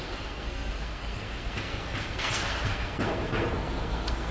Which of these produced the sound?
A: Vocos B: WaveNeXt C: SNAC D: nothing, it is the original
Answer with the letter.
C